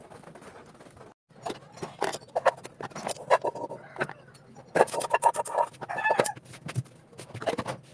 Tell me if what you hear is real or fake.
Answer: real